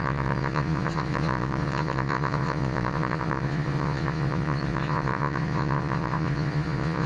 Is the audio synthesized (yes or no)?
yes